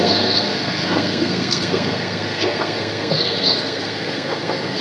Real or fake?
fake